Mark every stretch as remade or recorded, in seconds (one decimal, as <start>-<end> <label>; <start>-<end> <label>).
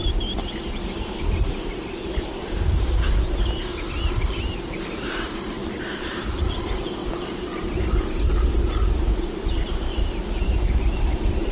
0.0-0.6 recorded; 0.6-11.5 remade